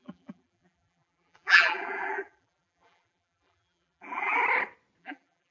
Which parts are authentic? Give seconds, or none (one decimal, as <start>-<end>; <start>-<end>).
4.4-5.0